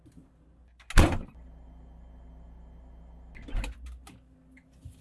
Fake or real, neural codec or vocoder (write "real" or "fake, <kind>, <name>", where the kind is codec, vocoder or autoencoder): real